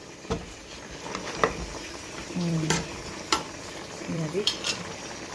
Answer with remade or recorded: remade